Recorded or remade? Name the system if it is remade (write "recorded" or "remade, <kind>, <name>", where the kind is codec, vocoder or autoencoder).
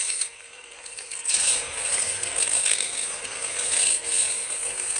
remade, codec, SNAC